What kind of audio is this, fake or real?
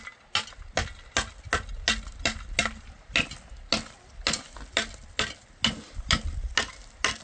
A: real